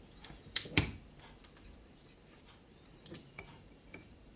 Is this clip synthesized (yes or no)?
yes